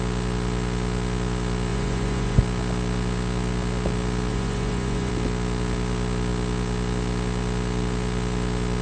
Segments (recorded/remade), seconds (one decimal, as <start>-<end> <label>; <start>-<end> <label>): 0.0-1.7 recorded; 1.7-2.4 remade; 2.4-4.3 recorded; 4.3-5.1 remade; 5.1-8.8 recorded